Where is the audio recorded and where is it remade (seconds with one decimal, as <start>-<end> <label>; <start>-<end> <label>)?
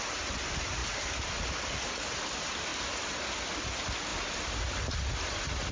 0.0-5.7 recorded